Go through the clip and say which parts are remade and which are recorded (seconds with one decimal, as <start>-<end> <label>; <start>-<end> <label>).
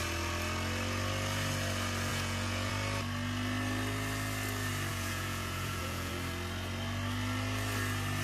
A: 0.0-2.1 recorded; 2.1-2.7 remade; 2.7-4.9 recorded; 4.9-6.1 remade; 6.1-8.2 recorded